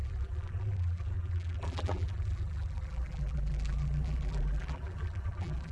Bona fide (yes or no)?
no